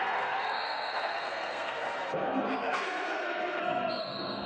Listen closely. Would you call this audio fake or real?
fake